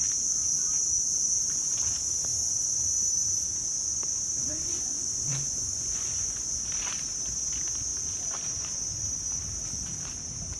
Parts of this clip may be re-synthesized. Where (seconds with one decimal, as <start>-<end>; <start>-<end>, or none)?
4.4-6.6